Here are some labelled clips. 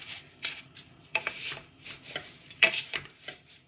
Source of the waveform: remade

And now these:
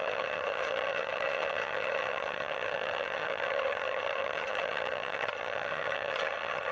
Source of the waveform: remade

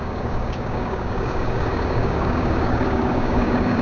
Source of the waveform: remade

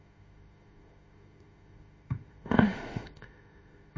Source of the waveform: remade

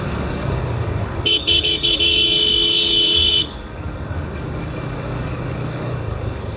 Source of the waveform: remade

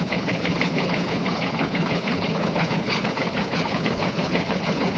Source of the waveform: remade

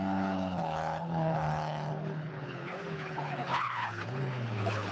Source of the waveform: remade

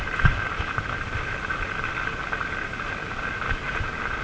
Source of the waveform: recorded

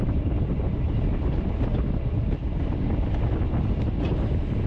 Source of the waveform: recorded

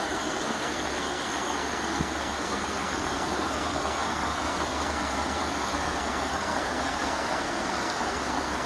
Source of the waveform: remade